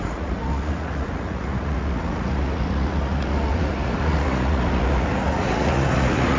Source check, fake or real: fake